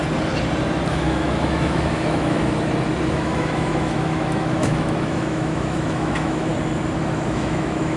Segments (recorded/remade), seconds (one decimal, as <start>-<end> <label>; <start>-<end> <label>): 0.0-0.9 recorded; 0.9-2.4 remade; 2.4-3.1 recorded; 3.1-6.5 remade; 6.5-7.0 recorded; 7.0-8.0 remade